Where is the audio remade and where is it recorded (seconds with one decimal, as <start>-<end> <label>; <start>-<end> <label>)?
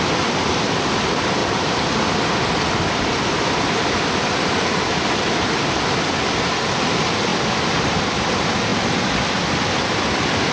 0.0-7.3 remade; 7.3-7.9 recorded; 7.9-8.7 remade; 8.7-9.5 recorded; 9.5-10.5 remade